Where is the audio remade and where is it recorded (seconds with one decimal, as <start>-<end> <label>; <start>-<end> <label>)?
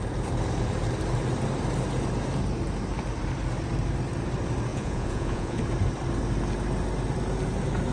0.0-4.7 recorded; 4.7-5.6 remade; 5.6-7.9 recorded